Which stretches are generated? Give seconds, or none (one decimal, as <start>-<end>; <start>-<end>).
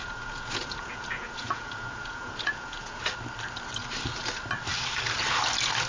0.0-3.0